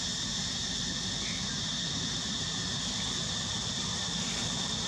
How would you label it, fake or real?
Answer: real